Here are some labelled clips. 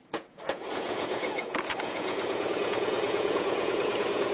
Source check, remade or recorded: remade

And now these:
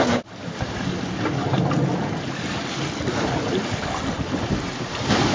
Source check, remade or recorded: recorded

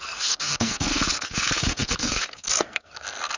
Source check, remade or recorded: remade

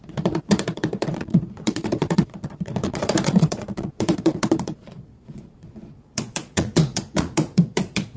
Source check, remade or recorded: remade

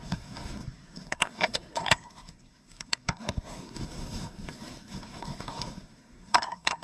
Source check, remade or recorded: remade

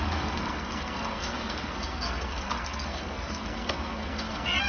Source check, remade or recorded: remade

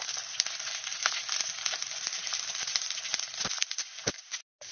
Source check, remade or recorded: recorded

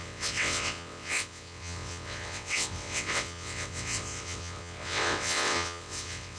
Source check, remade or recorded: remade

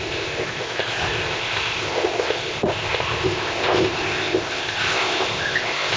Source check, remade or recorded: remade